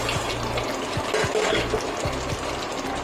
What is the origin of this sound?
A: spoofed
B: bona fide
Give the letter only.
B